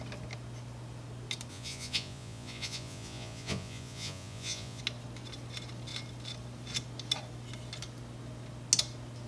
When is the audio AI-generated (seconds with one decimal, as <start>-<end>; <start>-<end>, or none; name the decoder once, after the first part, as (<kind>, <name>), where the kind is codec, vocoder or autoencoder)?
1.5-4.8 (vocoder, Vocos)